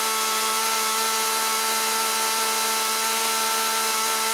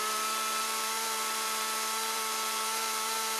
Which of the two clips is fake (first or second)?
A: second